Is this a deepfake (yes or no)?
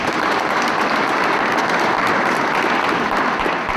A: no